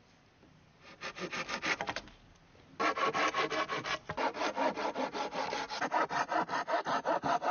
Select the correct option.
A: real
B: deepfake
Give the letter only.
A